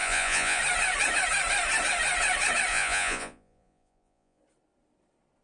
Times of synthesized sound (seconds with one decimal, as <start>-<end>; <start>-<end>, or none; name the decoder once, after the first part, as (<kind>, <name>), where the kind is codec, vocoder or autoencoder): 0.0-0.6 (vocoder, Vocos); 2.7-4.4